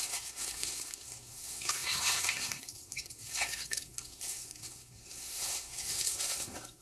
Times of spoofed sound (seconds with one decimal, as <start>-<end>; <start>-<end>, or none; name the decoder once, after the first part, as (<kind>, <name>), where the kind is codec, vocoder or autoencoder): 0.0-6.8 (codec, SNAC)